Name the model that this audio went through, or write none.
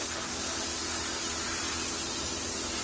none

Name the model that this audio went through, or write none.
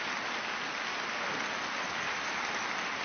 none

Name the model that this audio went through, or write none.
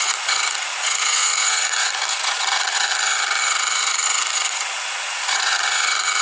vocoder, Vocos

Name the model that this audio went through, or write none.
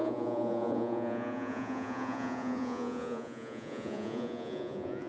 vocoder, Vocos